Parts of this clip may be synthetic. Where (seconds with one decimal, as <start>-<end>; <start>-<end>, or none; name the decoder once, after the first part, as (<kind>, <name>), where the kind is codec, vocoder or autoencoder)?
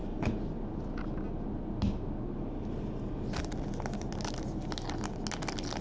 0.0-0.8 (vocoder, BigVGAN v2)